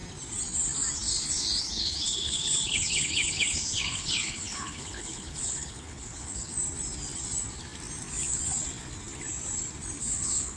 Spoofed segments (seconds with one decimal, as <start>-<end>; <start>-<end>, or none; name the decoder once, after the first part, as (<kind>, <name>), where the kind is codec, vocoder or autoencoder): 1.6-6.5 (codec, HILCodec); 10.0-10.6